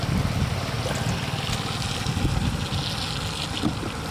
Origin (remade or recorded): recorded